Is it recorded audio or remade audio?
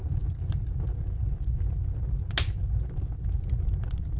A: recorded